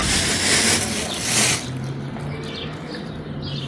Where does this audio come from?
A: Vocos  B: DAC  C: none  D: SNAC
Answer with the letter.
C